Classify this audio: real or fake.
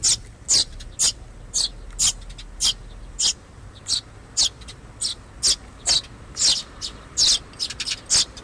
real